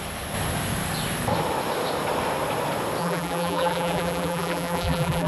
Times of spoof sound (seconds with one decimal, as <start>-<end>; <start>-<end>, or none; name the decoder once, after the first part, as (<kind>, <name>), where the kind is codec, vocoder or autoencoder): 3.0-5.3 (vocoder, BigVGAN v2)